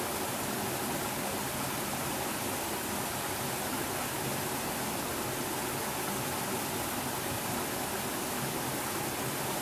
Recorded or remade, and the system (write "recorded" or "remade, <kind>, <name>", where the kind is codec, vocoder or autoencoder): recorded